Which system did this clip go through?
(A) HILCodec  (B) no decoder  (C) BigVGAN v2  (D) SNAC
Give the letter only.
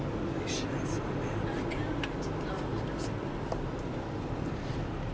B